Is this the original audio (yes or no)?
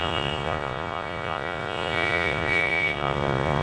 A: no